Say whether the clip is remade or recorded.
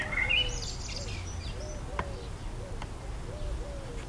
recorded